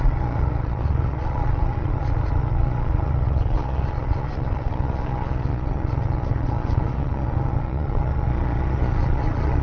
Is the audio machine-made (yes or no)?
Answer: yes